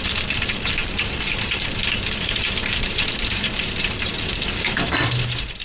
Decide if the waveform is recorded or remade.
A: remade